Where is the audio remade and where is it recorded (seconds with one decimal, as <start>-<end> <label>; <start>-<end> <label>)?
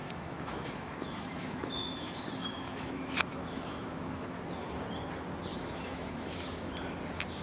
0.0-4.4 remade; 4.4-5.5 recorded; 5.5-6.7 remade; 6.7-7.4 recorded